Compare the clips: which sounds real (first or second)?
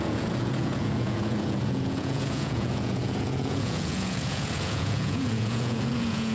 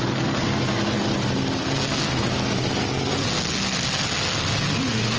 second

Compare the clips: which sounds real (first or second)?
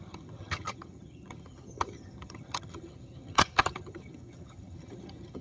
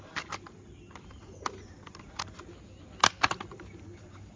second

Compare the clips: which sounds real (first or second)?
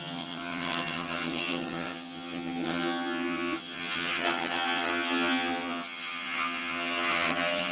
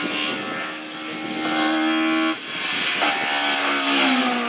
second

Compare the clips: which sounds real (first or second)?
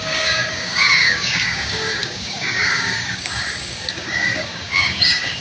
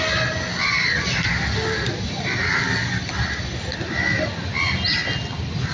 second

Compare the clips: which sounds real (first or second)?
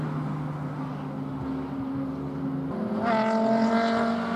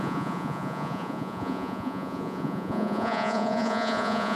first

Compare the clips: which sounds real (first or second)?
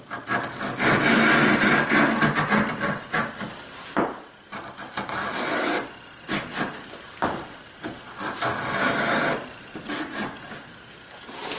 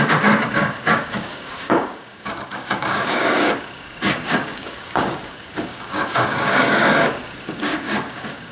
first